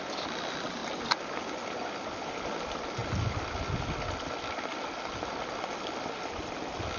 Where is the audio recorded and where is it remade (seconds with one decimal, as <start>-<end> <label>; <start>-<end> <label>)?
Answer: 0.0-7.0 recorded